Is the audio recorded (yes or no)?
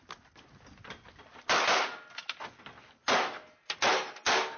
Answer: yes